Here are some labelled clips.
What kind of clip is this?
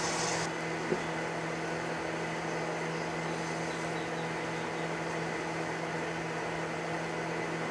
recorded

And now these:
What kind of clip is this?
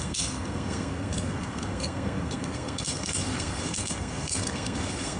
remade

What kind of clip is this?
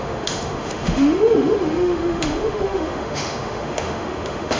remade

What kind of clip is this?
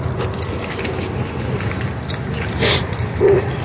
recorded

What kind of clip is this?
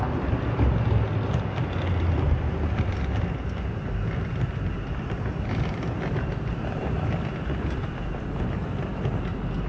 recorded